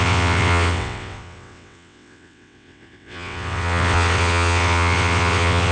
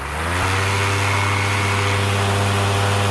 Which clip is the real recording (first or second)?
second